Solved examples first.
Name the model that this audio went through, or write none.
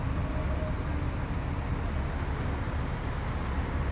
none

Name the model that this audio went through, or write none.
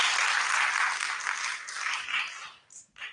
none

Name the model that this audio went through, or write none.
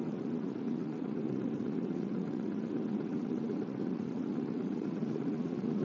vocoder, Vocos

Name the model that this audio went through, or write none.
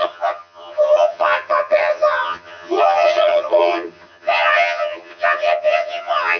vocoder, HiFi-GAN